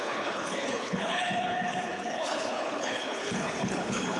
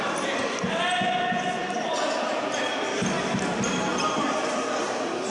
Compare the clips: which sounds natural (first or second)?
second